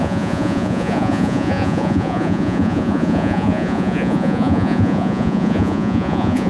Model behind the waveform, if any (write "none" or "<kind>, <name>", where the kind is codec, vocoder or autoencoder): vocoder, Vocos